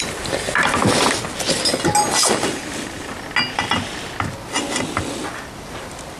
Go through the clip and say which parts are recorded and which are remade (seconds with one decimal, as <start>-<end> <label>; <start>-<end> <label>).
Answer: 0.0-6.2 recorded